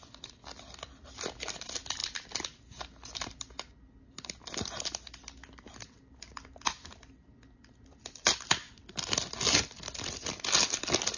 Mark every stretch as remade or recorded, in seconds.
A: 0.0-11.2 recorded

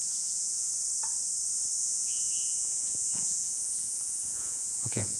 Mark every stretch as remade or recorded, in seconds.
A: 0.0-0.7 remade; 0.7-1.8 recorded; 1.8-5.2 remade

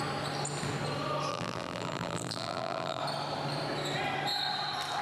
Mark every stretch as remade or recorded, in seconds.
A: 0.0-1.3 recorded; 1.3-3.0 remade; 3.0-5.0 recorded

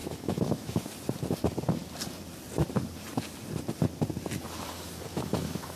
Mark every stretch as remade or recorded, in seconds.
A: 0.0-0.9 remade; 0.9-5.1 recorded; 5.1-5.8 remade